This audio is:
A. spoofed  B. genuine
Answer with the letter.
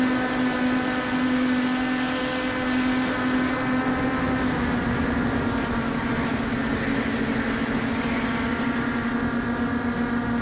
B